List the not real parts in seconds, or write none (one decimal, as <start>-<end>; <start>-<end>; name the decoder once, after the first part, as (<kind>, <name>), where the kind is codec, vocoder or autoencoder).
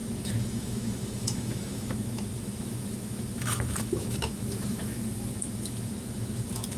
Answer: 0.0-6.8 (autoencoder, DAC-VAE)